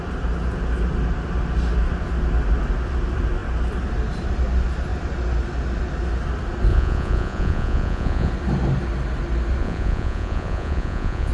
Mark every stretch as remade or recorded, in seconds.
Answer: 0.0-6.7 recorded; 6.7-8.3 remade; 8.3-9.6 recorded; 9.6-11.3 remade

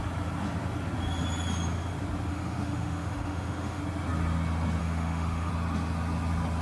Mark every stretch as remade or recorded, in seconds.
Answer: 0.0-2.3 recorded; 2.3-3.8 remade; 3.8-4.8 recorded; 4.8-5.5 remade; 5.5-6.6 recorded

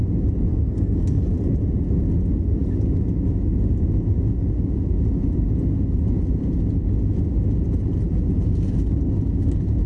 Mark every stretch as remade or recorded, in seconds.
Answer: 0.0-0.5 recorded; 0.5-1.2 remade; 1.2-9.9 recorded